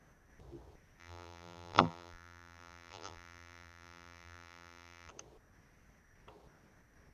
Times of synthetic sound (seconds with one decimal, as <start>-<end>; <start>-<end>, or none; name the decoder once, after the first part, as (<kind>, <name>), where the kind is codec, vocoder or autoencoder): 1.0-5.1 (vocoder, BigVGAN v2)